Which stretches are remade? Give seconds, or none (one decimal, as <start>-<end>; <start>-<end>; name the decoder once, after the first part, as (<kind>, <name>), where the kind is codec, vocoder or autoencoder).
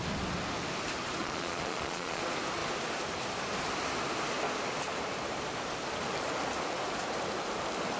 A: 1.2-2.2 (vocoder, Vocos)